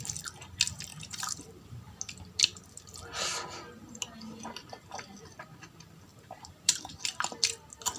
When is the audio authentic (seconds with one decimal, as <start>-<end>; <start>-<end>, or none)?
0.0-0.9; 2.0-6.1; 7.0-8.0